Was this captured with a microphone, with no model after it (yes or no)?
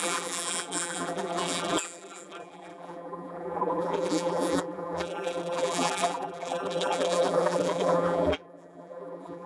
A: no